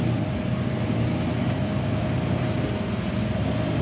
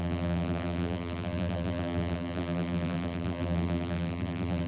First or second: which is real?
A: first